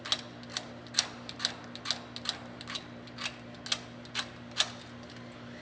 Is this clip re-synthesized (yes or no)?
no